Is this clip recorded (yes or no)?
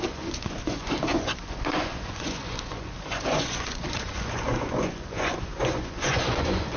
no